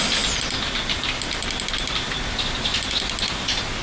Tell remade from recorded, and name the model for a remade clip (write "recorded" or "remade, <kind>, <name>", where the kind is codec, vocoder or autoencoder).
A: recorded